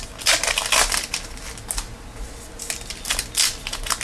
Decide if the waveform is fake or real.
real